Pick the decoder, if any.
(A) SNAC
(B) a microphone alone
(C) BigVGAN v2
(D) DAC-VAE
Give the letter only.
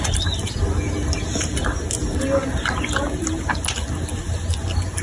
B